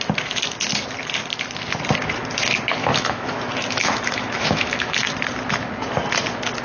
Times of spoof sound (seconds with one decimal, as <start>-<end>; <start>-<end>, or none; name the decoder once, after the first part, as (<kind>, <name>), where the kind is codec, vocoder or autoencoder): 2.8-5.1 (autoencoder, DAC-VAE)